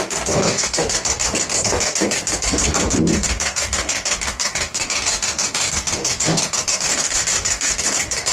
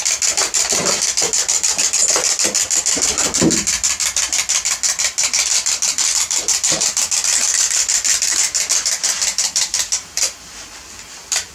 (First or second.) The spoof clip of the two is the first